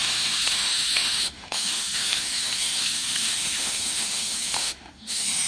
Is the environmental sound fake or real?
fake